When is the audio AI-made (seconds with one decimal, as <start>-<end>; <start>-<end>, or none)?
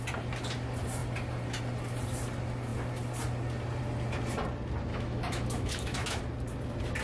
4.9-6.2